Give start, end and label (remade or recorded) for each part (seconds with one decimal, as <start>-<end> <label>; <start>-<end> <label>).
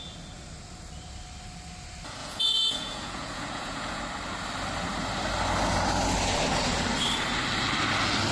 0.0-2.2 recorded; 2.2-4.0 remade; 4.0-8.3 recorded